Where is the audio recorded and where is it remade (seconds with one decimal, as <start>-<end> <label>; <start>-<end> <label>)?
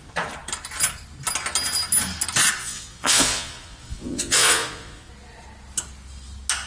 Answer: 0.0-2.6 recorded; 2.6-5.1 remade; 5.1-6.7 recorded